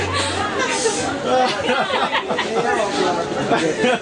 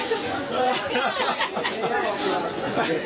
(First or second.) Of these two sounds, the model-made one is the second